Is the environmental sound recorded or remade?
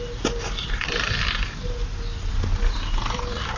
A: recorded